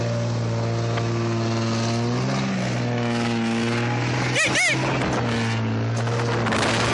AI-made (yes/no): no